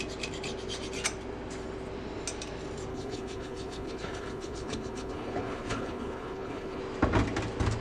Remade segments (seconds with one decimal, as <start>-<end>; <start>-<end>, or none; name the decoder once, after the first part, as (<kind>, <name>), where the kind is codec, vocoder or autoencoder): 2.9-6.8 (codec, HILCodec)